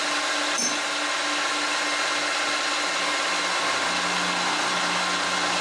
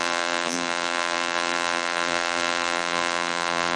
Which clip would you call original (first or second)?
first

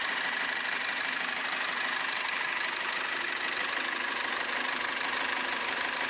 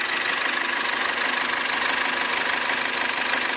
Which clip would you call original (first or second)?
second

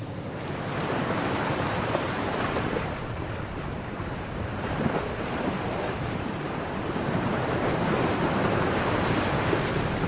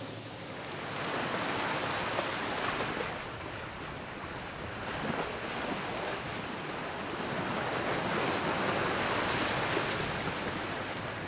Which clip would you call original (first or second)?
second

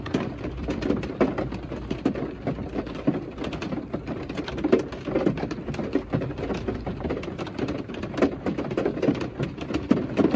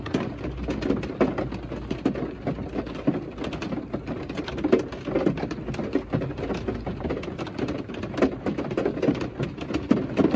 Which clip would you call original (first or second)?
second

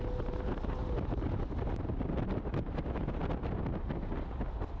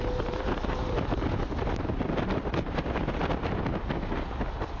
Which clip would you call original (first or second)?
first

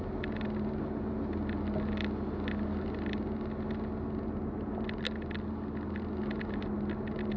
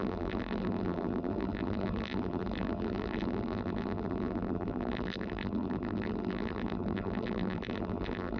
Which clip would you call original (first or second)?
first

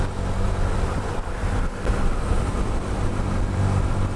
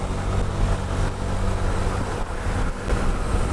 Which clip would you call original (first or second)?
second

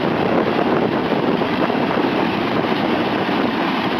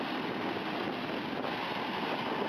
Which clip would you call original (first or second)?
second